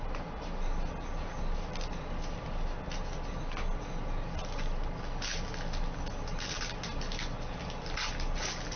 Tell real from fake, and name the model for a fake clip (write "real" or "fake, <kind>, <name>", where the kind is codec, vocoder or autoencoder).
real